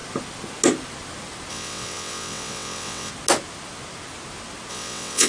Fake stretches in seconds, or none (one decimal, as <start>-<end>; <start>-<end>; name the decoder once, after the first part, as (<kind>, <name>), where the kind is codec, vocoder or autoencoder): 1.5-3.1 (vocoder, WaveNeXt); 4.7-5.3